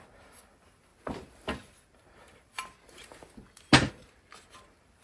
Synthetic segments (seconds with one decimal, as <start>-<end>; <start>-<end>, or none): none

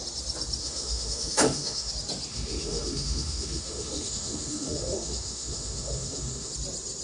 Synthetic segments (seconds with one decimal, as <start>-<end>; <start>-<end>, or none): 0.6-1.9; 2.3-6.5

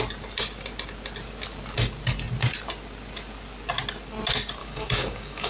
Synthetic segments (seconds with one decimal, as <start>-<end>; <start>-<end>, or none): 4.6-5.5

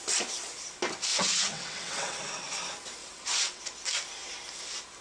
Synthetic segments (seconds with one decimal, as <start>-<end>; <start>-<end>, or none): 1.1-2.2; 3.0-3.6

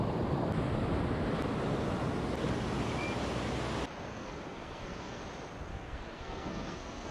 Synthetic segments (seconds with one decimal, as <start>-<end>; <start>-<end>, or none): 4.1-5.2; 5.7-7.1

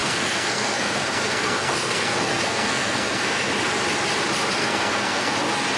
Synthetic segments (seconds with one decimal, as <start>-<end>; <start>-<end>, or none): 0.0-3.5; 4.6-5.3